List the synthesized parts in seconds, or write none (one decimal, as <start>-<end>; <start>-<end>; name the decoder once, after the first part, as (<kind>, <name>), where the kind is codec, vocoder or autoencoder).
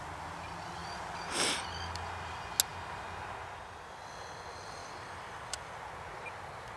none